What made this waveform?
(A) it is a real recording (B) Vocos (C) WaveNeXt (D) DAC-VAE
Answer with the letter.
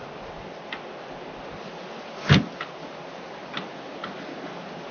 A